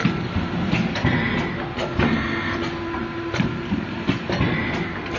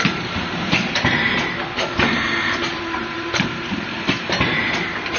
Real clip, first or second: first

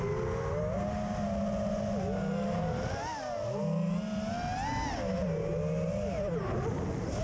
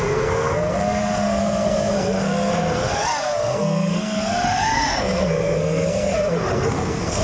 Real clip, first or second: first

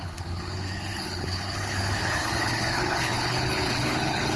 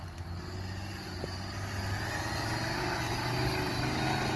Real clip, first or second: second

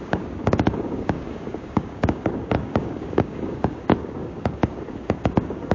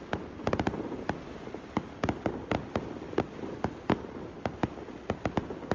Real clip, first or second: second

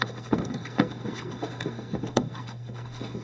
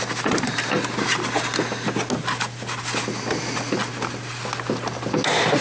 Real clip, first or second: second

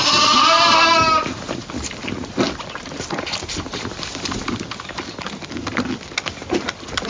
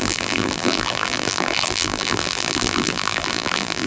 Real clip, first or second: first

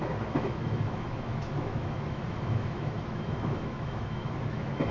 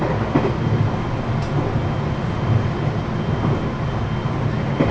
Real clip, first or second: second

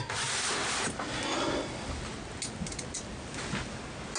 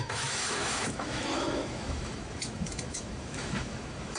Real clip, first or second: first